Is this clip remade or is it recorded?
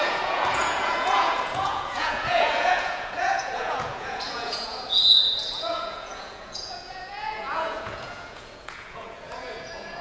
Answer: remade